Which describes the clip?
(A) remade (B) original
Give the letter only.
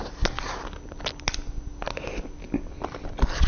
B